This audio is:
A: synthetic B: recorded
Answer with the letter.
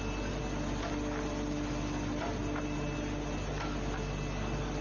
B